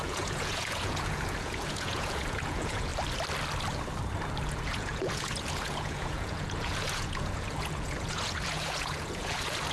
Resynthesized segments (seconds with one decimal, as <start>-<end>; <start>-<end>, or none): 0.0-2.9; 4.4-9.7